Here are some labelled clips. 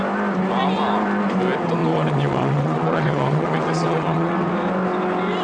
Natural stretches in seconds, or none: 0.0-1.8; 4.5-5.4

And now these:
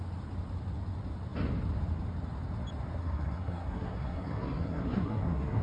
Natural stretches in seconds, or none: 0.0-3.0

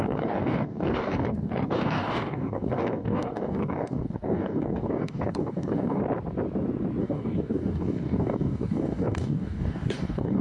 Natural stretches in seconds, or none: 6.0-7.0

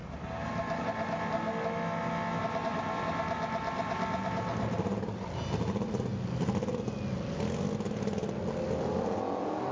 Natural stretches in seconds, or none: 0.0-9.7

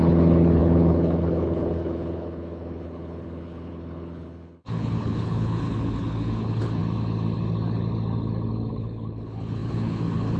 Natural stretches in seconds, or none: 6.8-8.7

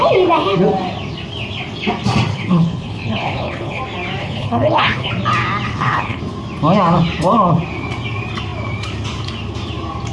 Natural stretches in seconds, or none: 0.0-2.3; 3.8-4.2; 5.1-5.7; 6.2-10.1